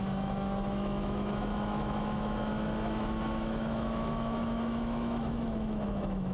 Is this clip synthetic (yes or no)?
yes